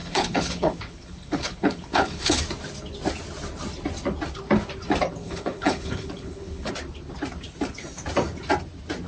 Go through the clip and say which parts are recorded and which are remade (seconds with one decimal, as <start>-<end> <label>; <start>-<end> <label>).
0.0-2.4 remade; 2.4-5.2 recorded; 5.2-6.7 remade; 6.7-9.1 recorded